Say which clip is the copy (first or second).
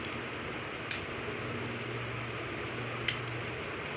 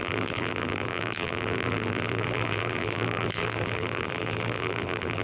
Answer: second